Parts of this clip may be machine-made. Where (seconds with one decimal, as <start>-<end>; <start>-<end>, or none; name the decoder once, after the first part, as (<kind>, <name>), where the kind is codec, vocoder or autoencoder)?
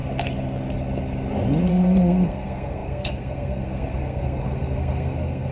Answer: 1.7-5.5 (codec, SNAC)